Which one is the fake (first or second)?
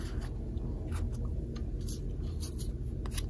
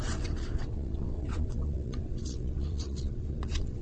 second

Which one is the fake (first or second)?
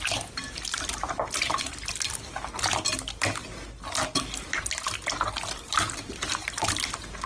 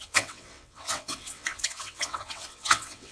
second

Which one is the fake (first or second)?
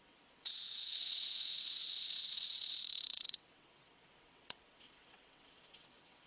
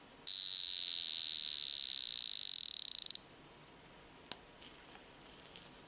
first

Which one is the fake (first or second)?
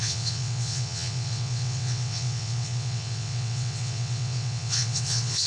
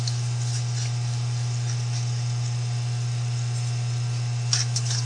first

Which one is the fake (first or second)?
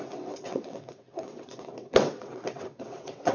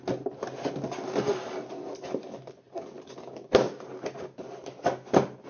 first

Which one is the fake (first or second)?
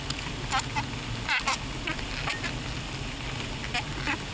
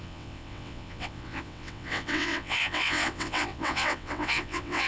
second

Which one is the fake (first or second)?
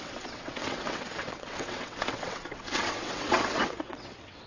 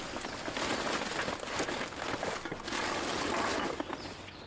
first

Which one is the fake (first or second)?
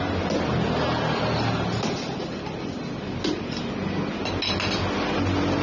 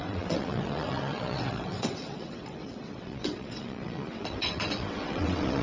second